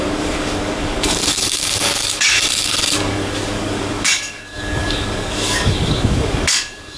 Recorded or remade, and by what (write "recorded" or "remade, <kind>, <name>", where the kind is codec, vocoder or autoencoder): remade, codec, DAC